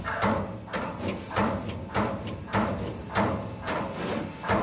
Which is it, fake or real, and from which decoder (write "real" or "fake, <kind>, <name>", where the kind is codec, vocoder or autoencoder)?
real